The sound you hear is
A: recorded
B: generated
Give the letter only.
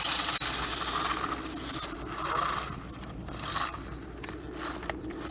A